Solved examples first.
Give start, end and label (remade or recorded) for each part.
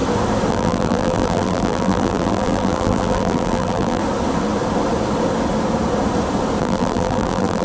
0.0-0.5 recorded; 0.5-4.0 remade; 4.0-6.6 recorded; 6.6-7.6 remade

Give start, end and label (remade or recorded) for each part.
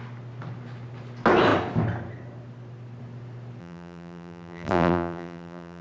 0.0-3.6 recorded; 3.6-5.8 remade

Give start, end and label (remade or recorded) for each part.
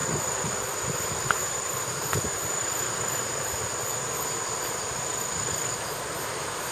0.0-3.9 remade; 3.9-6.7 recorded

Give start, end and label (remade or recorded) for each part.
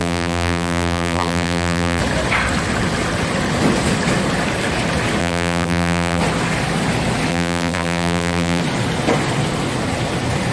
0.0-2.0 remade; 2.0-5.2 recorded; 5.2-6.2 remade; 6.2-7.3 recorded; 7.3-8.6 remade; 8.6-10.5 recorded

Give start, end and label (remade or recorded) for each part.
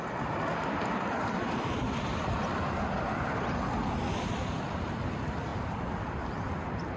0.0-7.0 recorded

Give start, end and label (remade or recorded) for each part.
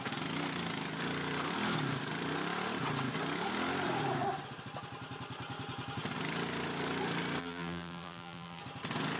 0.0-7.4 recorded; 7.4-8.6 remade; 8.6-9.2 recorded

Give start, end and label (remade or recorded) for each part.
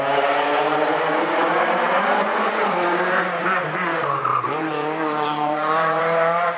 0.0-0.5 recorded; 0.5-3.6 remade; 3.6-4.3 recorded; 4.3-6.0 remade; 6.0-6.6 recorded